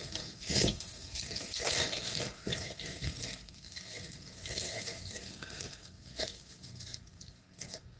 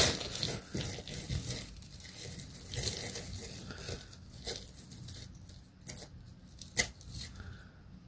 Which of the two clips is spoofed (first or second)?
first